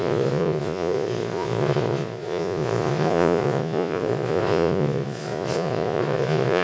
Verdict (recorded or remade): remade